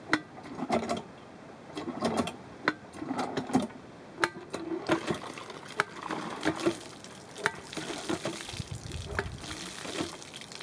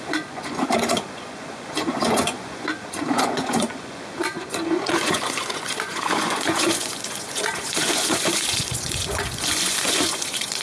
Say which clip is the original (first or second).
first